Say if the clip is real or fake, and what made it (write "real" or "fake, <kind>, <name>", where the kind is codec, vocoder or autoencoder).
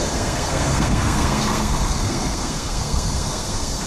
fake, codec, SNAC